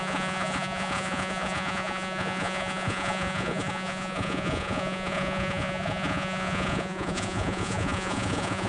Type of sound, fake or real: fake